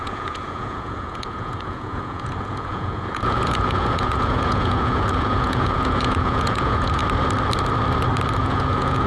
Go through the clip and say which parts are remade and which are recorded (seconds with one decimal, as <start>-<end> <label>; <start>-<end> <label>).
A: 0.0-7.0 remade; 7.0-8.4 recorded; 8.4-9.1 remade